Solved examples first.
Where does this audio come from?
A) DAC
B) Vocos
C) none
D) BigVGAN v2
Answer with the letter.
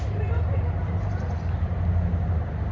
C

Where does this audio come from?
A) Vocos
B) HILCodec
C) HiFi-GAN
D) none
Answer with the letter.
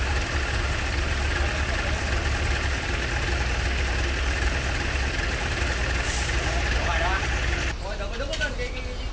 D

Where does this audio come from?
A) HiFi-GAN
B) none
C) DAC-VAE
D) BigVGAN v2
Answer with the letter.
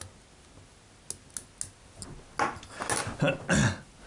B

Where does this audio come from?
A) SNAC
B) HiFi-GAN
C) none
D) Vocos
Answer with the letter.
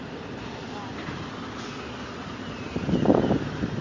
C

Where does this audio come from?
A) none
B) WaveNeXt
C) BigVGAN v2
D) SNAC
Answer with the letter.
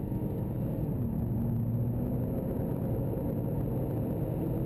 A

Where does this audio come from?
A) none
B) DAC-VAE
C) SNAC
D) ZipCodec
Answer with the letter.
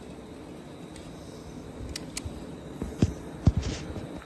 A